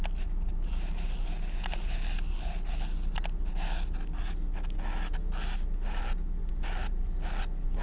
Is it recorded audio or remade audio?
recorded